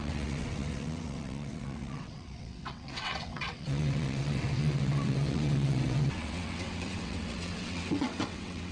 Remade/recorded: remade